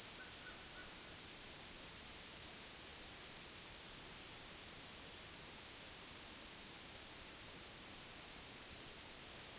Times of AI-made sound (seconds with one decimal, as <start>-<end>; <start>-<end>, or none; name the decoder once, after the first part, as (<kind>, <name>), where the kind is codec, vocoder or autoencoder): 0.0-9.6 (vocoder, BigVGAN v2)